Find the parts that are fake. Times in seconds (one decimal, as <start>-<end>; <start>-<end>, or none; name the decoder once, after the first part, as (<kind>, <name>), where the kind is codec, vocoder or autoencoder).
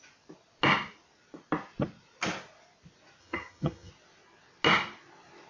3.2-3.9 (vocoder, HiFi-GAN)